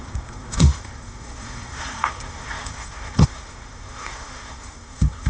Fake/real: fake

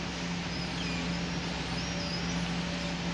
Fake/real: real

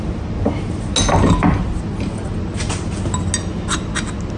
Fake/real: real